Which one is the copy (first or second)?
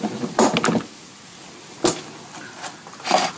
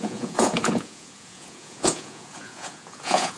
second